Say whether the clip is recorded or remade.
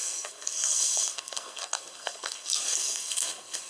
remade